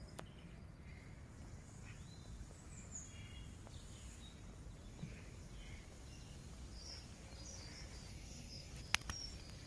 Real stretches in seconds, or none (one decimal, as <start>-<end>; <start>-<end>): 0.0-8.1; 8.7-9.7